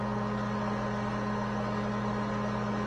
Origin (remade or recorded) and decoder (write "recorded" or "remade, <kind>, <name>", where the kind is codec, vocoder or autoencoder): recorded